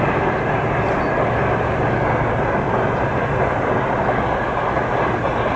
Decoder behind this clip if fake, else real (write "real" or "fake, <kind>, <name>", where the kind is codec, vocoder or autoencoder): real